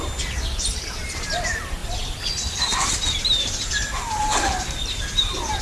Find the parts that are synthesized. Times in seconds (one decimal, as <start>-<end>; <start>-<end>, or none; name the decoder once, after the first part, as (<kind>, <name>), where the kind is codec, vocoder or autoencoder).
none